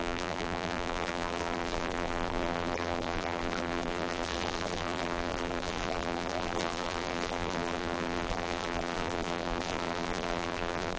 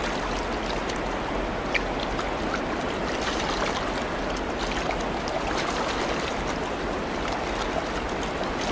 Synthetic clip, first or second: first